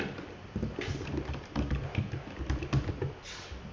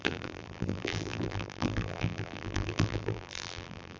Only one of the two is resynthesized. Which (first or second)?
second